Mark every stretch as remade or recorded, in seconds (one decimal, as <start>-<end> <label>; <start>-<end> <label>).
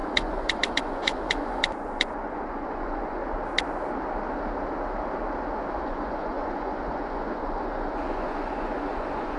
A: 0.0-3.2 remade; 3.2-5.8 recorded; 5.8-9.4 remade